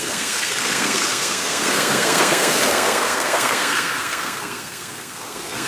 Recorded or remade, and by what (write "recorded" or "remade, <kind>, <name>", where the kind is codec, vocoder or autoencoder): remade, codec, SNAC